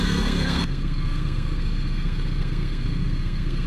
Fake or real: fake